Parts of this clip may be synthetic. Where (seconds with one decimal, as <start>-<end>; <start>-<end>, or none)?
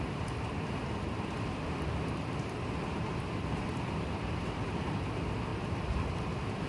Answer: 5.5-6.1